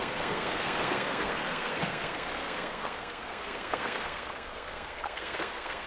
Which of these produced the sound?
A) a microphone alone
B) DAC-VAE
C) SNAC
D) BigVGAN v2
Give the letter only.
C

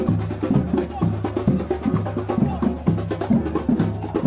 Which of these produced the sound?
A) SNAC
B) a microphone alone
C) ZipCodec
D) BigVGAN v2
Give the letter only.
B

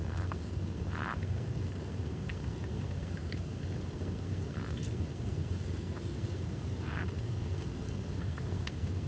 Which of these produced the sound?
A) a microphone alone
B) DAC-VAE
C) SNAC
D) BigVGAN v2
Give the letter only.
C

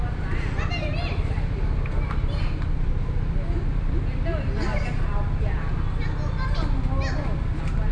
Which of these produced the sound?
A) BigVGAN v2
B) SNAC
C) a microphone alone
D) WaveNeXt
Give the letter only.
C